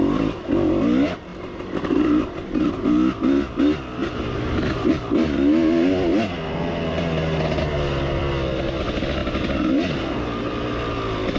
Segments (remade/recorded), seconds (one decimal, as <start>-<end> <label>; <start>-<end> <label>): 0.0-1.3 recorded; 1.3-2.7 remade; 2.7-4.0 recorded; 4.0-4.9 remade; 4.9-11.4 recorded